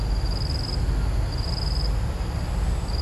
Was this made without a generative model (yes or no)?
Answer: yes